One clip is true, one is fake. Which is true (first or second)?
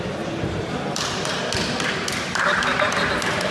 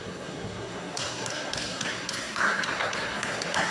first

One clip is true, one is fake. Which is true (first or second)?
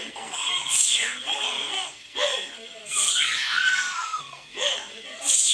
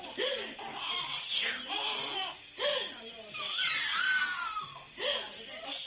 second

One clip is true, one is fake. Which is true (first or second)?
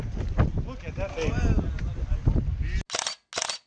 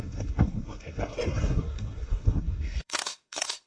first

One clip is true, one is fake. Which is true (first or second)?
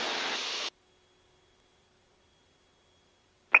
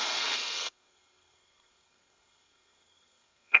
first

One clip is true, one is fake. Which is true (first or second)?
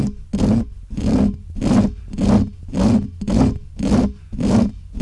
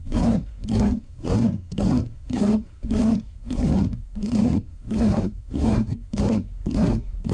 first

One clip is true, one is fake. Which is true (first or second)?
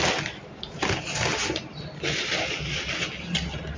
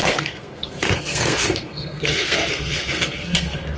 first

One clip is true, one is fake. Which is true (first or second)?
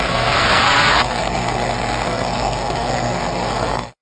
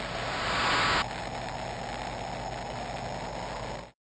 second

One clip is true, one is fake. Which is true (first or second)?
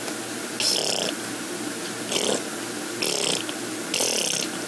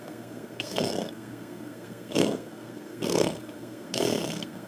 first